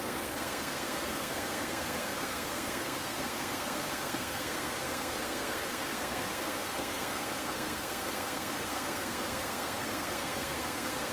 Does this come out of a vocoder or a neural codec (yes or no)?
yes